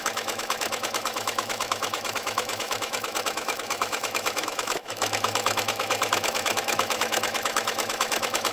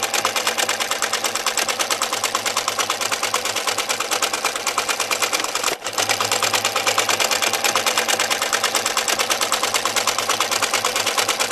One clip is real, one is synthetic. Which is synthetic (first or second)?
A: first